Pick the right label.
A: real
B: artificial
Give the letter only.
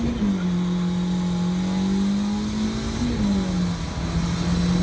A